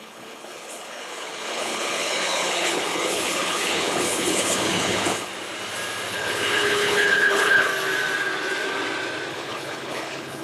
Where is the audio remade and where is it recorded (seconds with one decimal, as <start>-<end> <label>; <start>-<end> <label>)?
0.0-5.3 remade; 5.3-6.1 recorded; 6.1-7.7 remade; 7.7-9.3 recorded; 9.3-10.4 remade